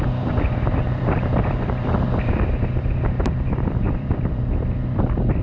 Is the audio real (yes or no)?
no